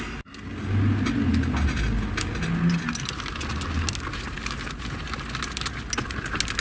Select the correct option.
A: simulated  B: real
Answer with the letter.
B